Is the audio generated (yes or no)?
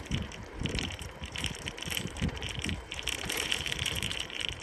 yes